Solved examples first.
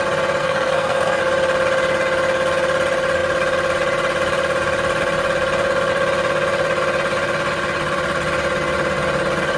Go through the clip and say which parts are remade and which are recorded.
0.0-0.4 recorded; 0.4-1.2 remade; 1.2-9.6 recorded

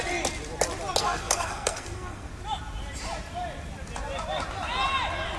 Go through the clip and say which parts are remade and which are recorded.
0.0-1.0 recorded; 1.0-2.3 remade; 2.3-5.4 recorded

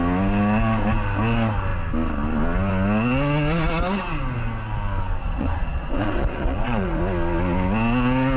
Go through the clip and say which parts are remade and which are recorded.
0.0-5.2 recorded; 5.2-7.0 remade; 7.0-8.4 recorded

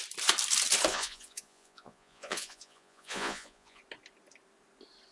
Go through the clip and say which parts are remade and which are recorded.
0.0-0.9 recorded; 0.9-3.8 remade; 3.8-5.1 recorded